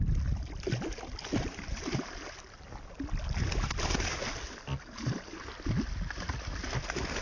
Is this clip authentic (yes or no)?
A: yes